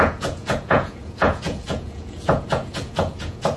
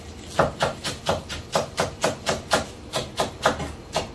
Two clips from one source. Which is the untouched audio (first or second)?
second